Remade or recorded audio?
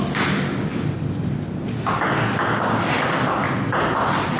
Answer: recorded